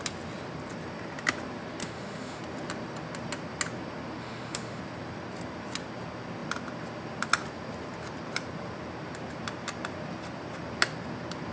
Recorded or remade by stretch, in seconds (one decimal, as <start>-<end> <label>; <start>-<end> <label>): 0.0-1.8 recorded; 1.8-2.4 remade; 2.4-4.2 recorded; 4.2-4.8 remade; 4.8-11.5 recorded